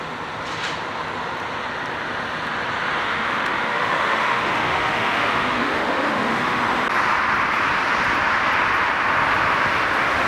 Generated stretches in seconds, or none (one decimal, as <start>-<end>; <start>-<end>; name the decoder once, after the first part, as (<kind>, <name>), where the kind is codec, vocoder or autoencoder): 3.0-6.6 (autoencoder, DAC-VAE)